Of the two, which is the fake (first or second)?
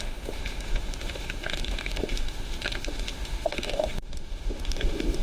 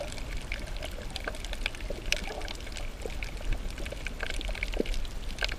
first